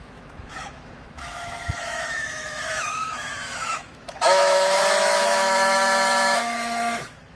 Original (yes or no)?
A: no